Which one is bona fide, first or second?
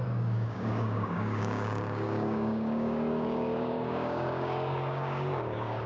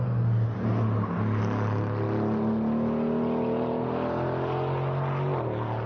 second